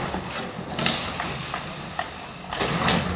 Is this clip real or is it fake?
real